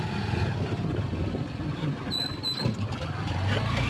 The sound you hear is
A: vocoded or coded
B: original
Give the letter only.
B